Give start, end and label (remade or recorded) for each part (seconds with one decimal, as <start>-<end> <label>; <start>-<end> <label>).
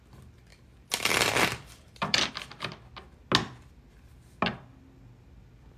0.0-0.5 recorded; 0.5-2.3 remade; 2.3-5.8 recorded